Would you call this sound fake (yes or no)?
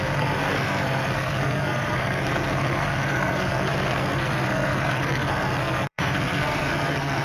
yes